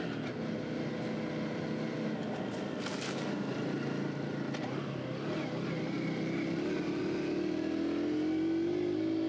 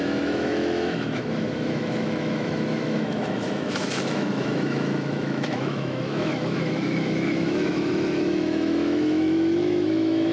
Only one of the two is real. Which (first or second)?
first